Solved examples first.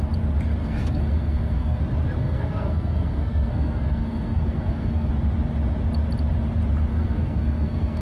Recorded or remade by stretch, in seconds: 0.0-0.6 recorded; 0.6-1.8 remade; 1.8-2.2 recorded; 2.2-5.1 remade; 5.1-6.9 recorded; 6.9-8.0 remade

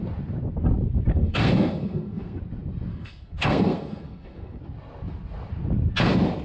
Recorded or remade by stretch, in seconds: 0.0-1.1 recorded; 1.1-2.4 remade; 2.4-2.9 recorded; 2.9-4.6 remade; 4.6-6.4 recorded